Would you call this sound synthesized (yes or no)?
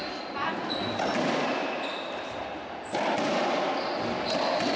no